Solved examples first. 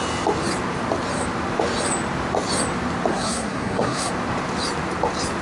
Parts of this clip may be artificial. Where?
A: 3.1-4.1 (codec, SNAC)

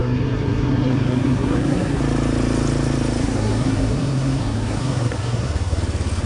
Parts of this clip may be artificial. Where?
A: 0.0-2.0 (codec, SNAC); 3.2-5.8

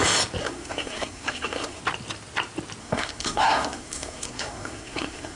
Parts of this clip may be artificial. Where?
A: 0.4-1.8 (codec, SNAC); 2.8-5.4

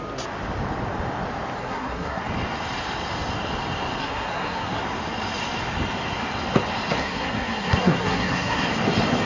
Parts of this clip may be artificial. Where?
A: 1.6-2.2 (codec, SNAC); 4.0-4.8; 7.0-8.7

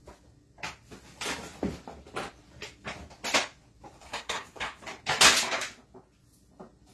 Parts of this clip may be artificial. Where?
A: 4.0-4.8 (codec, SNAC)

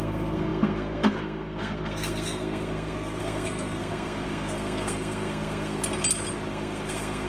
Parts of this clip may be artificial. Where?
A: 0.0-5.8 (codec, SNAC); 6.5-7.3

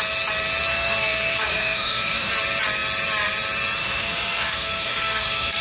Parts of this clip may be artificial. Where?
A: 0.7-2.3 (codec, SNAC); 3.8-5.6

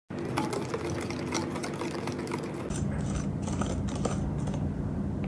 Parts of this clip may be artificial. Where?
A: none